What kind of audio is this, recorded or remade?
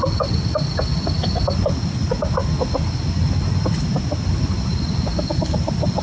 recorded